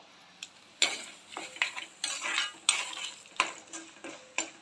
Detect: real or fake real